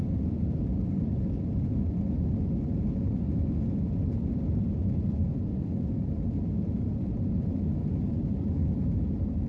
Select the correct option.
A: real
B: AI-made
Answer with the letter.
A